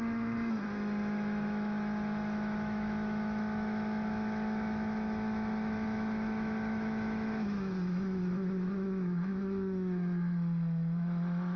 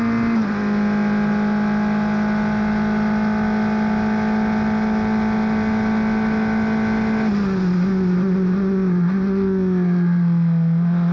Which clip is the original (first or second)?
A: second